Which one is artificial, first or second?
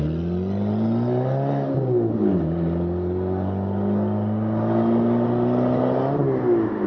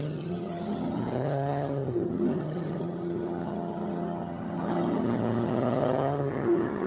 second